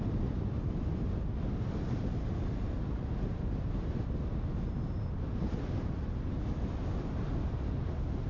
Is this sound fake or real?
real